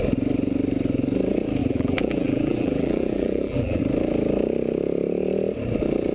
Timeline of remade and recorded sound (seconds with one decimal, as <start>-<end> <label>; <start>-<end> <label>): 0.0-1.6 recorded; 1.6-3.8 remade; 3.8-6.1 recorded